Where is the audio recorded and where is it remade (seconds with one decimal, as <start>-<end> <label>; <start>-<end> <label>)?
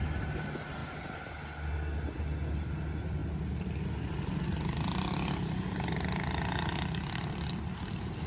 0.0-8.3 recorded